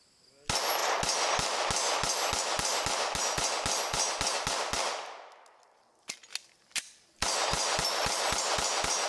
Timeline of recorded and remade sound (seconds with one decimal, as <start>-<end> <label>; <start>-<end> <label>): 0.0-9.1 recorded